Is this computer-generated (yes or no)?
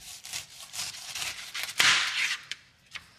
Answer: yes